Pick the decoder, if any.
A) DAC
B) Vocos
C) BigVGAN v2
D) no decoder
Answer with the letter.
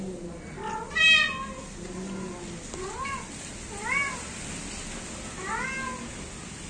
D